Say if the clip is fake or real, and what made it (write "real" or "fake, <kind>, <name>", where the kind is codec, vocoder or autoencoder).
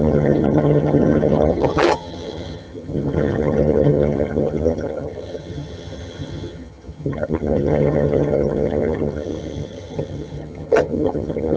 fake, vocoder, HiFi-GAN